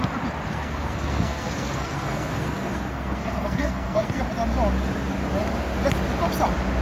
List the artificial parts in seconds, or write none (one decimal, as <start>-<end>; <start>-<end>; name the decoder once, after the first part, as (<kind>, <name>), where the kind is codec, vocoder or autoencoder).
0.5-4.2 (codec, SNAC)